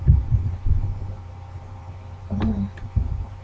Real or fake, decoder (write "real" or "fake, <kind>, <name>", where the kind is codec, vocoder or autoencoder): fake, vocoder, BigVGAN v2